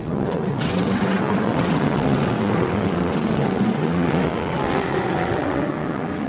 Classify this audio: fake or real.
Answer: fake